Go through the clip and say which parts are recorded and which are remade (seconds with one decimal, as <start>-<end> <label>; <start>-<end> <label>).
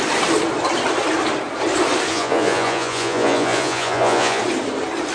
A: 0.0-2.1 recorded; 2.1-4.4 remade; 4.4-5.1 recorded